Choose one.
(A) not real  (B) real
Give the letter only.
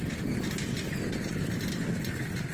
B